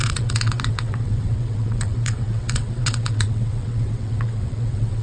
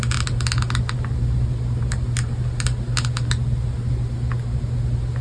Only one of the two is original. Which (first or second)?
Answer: second